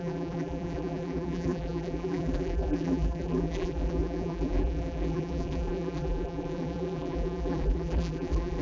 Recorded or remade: remade